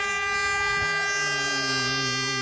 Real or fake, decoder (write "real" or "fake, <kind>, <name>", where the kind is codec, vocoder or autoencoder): real